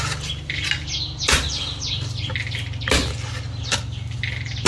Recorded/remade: recorded